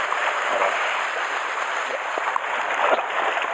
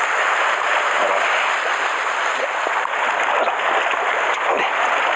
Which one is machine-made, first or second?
first